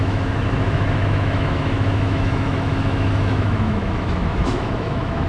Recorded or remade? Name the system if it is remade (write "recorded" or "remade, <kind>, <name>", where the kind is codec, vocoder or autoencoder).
remade, autoencoder, DAC-VAE